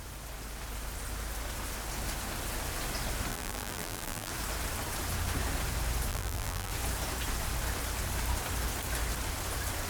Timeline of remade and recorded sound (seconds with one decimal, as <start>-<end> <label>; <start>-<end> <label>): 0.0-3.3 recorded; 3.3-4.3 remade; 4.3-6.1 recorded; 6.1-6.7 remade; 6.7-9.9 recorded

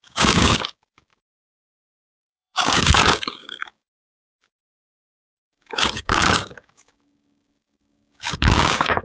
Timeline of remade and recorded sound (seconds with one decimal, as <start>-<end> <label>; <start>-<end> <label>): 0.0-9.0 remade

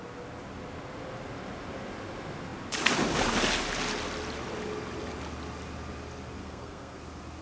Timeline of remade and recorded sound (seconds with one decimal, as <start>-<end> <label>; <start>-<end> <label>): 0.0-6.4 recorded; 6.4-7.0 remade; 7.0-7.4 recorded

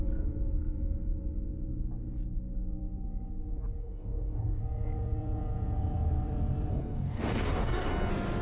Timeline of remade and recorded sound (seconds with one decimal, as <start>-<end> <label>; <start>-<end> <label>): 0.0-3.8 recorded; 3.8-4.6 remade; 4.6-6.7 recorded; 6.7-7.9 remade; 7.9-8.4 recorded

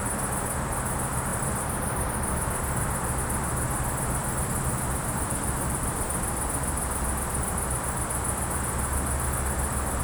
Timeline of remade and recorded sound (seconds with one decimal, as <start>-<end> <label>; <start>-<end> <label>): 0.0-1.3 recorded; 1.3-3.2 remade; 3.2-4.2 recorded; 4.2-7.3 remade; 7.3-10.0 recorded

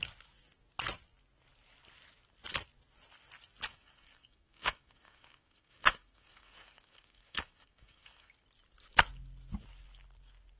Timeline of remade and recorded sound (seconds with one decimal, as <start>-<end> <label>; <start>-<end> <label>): 0.0-3.7 recorded; 3.7-8.3 remade; 8.3-10.6 recorded